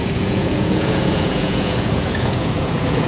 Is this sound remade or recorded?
remade